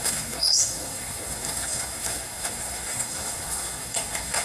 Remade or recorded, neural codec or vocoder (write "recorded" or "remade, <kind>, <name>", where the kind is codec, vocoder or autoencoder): remade, codec, SNAC